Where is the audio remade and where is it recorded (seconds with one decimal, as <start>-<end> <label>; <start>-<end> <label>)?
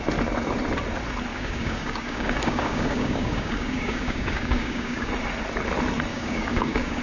0.0-1.3 recorded; 1.3-5.1 remade; 5.1-6.1 recorded; 6.1-7.0 remade